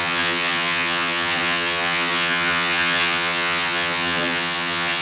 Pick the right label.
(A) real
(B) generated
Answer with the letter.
B